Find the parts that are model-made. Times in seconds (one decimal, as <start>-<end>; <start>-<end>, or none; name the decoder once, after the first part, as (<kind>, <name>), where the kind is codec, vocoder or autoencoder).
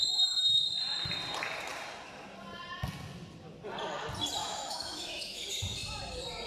0.0-0.6 (autoencoder, DAC-VAE); 4.4-5.5